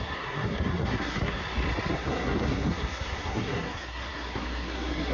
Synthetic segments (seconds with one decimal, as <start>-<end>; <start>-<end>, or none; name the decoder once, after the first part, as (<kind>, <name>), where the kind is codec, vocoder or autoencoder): 0.0-1.4 (codec, SNAC); 1.9-5.1